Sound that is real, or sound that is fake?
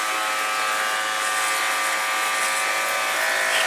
real